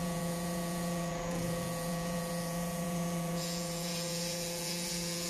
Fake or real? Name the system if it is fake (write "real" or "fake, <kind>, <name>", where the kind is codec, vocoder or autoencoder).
fake, vocoder, Vocos